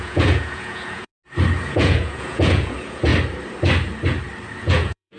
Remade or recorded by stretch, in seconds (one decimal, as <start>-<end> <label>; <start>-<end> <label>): 0.0-1.1 remade; 1.1-1.7 recorded; 1.7-3.1 remade; 3.1-4.6 recorded; 4.6-5.2 remade